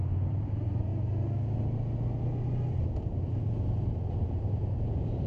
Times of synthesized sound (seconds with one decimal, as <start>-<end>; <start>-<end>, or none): 0.0-0.9; 4.1-5.3